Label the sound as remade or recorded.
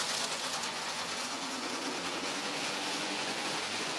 remade